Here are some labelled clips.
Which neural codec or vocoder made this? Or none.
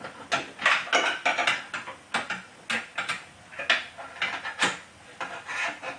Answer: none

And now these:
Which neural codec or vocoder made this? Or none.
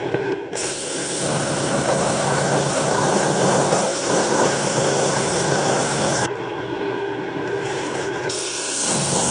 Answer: codec, SNAC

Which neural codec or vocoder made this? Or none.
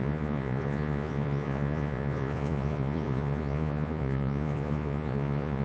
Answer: vocoder, Vocos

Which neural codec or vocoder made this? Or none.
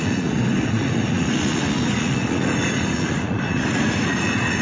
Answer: vocoder, Vocos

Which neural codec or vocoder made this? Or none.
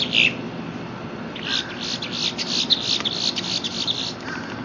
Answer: none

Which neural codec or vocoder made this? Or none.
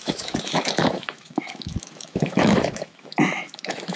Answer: autoencoder, DAC-VAE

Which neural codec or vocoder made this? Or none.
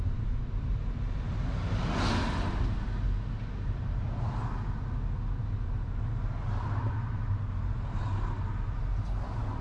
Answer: none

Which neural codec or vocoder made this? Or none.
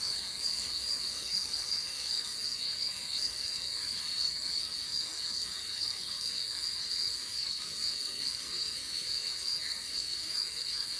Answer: codec, SNAC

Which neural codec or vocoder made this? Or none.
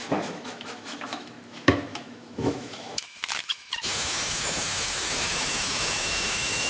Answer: autoencoder, DAC-VAE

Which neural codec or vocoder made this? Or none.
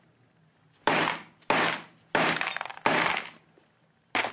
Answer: none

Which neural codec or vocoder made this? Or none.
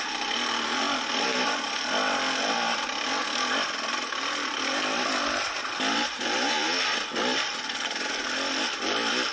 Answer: none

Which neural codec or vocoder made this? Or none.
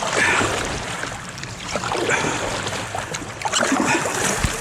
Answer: none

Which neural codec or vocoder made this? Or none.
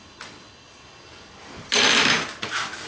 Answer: none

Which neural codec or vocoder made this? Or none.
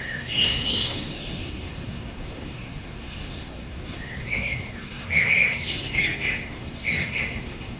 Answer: codec, SNAC